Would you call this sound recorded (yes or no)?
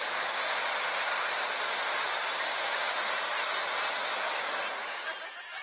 yes